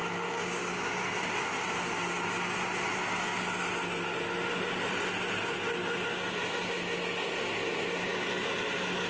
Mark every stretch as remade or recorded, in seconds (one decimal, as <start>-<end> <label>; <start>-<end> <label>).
0.0-0.7 remade; 0.7-9.1 recorded